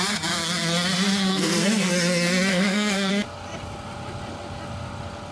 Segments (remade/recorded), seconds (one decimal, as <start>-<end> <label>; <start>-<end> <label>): 0.0-1.3 recorded; 1.3-1.9 remade; 1.9-2.5 recorded; 2.5-3.1 remade; 3.1-5.3 recorded